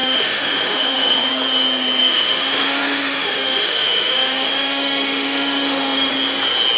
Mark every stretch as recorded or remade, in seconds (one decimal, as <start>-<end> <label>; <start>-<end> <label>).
0.0-1.3 remade; 1.3-2.0 recorded; 2.0-6.1 remade; 6.1-6.8 recorded